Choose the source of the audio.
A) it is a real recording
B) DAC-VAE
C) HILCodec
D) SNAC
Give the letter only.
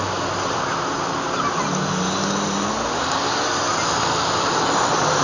A